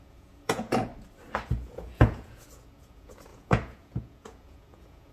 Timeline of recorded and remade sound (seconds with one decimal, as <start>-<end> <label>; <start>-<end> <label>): 0.0-0.9 remade; 0.9-1.4 recorded; 1.4-5.1 remade